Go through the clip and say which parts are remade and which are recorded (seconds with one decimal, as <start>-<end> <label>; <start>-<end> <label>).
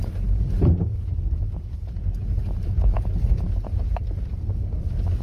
0.0-5.2 recorded